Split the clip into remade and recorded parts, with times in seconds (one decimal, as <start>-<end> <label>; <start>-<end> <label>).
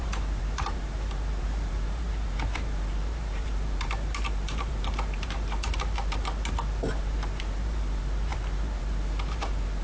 0.0-6.2 remade; 6.2-6.9 recorded; 6.9-9.8 remade